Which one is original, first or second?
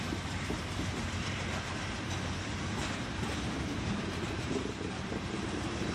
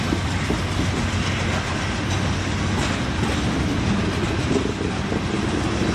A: second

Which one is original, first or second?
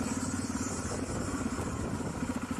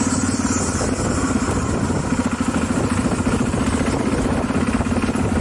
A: second